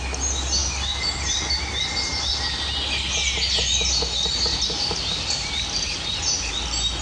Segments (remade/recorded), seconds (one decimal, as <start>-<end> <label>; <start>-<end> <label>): 0.0-0.6 recorded; 0.6-1.7 remade; 1.7-4.5 recorded; 4.5-6.5 remade; 6.5-7.0 recorded